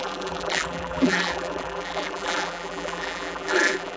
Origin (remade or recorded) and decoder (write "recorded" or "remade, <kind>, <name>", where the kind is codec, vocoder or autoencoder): remade, vocoder, BigVGAN v2